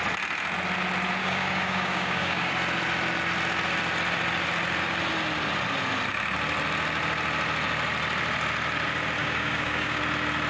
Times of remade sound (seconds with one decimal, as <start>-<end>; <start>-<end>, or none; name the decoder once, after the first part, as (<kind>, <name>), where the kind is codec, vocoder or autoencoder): 1.2-2.5 (codec, DAC); 9.2-10.0